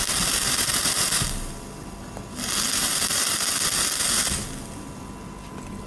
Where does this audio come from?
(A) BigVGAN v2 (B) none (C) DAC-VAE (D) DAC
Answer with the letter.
B